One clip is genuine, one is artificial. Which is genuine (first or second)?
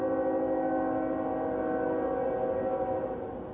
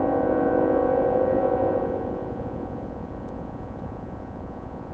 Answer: first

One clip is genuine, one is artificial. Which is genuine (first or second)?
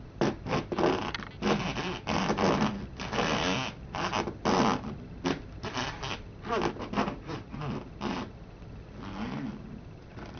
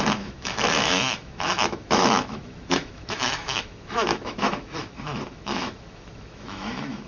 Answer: first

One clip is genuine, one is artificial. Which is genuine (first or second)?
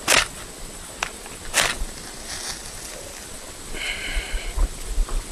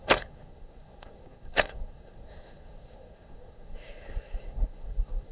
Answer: first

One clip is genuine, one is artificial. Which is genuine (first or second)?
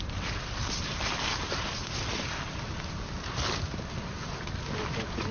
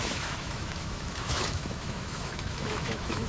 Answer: first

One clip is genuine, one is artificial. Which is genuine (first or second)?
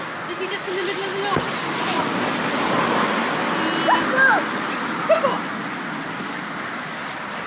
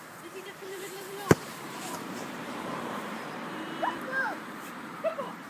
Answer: first